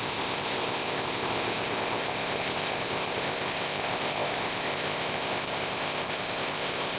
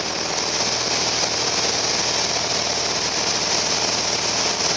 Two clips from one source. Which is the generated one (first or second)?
first